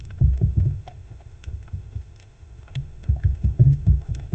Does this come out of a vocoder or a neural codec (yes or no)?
yes